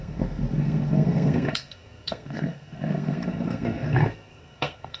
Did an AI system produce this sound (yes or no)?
yes